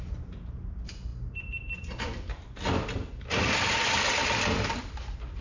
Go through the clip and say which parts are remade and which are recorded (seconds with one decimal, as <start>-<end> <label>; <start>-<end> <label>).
0.0-5.4 recorded